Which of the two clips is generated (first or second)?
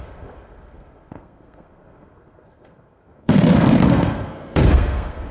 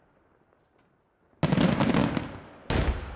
first